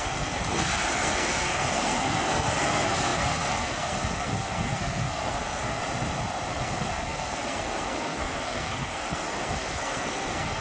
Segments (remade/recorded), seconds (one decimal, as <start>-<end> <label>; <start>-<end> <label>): 0.0-5.8 remade; 5.8-6.5 recorded; 6.5-10.6 remade